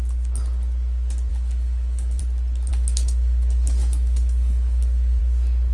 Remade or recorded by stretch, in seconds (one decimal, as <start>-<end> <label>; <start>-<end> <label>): 0.0-1.3 recorded; 1.3-2.2 remade; 2.2-2.7 recorded; 2.7-5.2 remade; 5.2-5.7 recorded